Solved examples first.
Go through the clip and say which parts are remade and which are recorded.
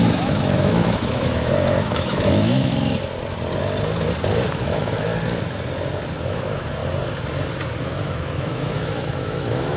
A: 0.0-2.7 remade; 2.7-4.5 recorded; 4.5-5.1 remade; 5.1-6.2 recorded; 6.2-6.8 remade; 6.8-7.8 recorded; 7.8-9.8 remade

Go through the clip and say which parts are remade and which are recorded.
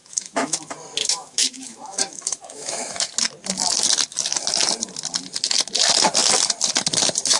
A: 0.0-0.6 remade; 0.6-1.0 recorded; 1.0-3.1 remade; 3.1-7.4 recorded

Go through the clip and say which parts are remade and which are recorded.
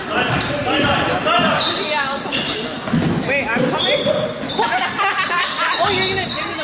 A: 0.0-6.6 recorded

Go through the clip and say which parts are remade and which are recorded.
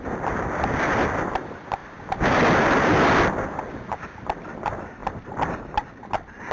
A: 0.0-6.5 recorded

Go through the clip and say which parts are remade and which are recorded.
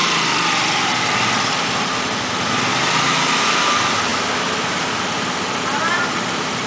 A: 0.0-6.7 recorded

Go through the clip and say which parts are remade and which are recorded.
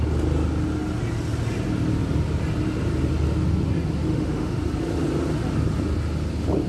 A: 0.0-4.1 recorded; 4.1-4.6 remade; 4.6-6.7 recorded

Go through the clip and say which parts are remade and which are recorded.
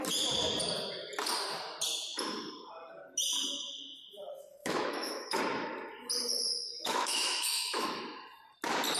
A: 0.0-4.6 recorded; 4.6-5.4 remade; 5.4-6.5 recorded; 6.5-8.0 remade; 8.0-9.0 recorded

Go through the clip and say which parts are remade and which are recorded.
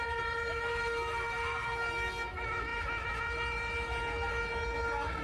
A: 0.0-5.2 remade